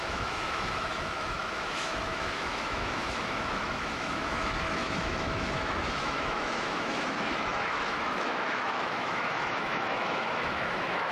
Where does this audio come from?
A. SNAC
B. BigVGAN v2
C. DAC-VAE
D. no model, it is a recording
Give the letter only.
C